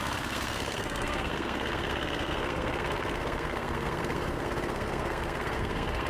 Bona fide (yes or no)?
no